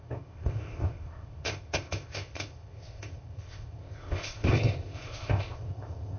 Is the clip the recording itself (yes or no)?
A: no